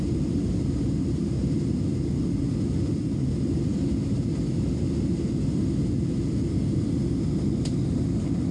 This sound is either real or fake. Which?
real